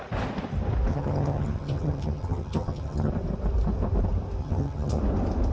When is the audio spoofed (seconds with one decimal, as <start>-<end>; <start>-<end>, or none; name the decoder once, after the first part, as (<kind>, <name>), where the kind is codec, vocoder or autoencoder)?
0.9-3.1 (vocoder, HiFi-GAN); 4.4-5.0